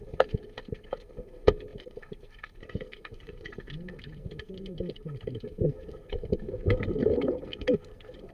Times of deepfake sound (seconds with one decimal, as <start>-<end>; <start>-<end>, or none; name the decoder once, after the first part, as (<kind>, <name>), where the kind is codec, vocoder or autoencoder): 0.0-8.3 (codec, SNAC)